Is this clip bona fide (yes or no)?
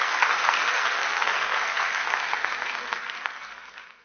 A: no